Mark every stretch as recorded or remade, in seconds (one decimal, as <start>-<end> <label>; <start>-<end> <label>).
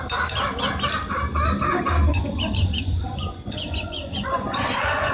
0.0-2.1 recorded; 2.1-5.1 remade